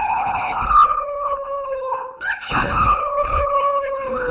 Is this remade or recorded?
remade